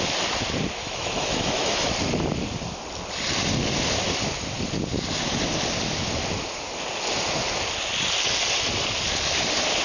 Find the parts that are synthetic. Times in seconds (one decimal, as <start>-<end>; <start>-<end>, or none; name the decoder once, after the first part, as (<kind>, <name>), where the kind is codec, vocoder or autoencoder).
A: 0.8-1.9 (autoencoder, DAC-VAE)

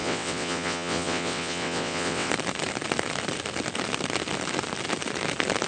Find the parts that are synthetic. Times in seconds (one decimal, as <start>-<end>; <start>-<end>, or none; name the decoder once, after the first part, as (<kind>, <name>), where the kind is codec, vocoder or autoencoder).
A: 0.0-2.3 (vocoder, WaveNeXt)